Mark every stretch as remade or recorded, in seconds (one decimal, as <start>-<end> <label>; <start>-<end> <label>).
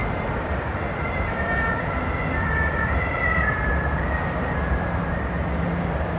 0.0-3.7 remade; 3.7-6.2 recorded